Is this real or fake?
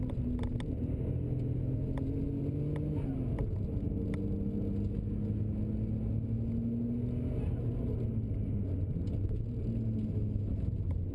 real